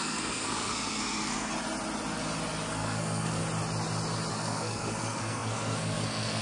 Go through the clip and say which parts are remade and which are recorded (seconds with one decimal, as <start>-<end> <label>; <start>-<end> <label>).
0.0-1.5 remade; 1.5-2.7 recorded; 2.7-3.4 remade; 3.4-4.3 recorded; 4.3-6.4 remade